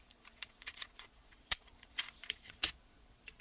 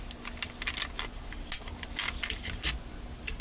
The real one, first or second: second